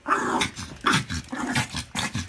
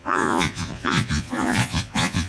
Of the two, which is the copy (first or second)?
second